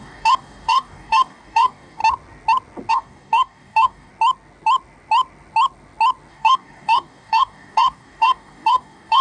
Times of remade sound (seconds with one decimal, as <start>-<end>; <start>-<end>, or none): 0.0-2.0; 2.9-4.1; 6.3-9.2